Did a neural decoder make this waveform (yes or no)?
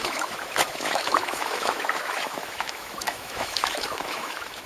yes